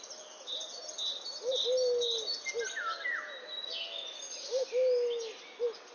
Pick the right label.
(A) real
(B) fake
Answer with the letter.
A